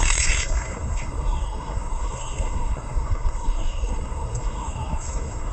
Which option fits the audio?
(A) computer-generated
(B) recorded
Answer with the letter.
A